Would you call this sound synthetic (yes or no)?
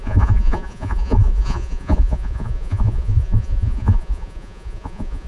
yes